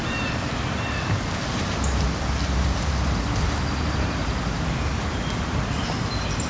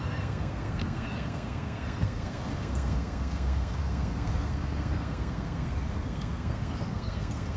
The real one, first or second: first